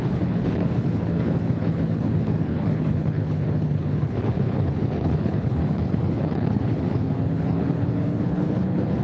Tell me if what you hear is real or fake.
fake